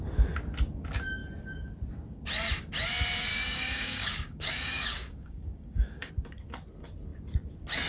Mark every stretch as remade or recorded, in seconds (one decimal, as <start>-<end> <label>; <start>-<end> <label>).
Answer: 0.0-3.3 recorded; 3.3-6.1 remade; 6.1-7.9 recorded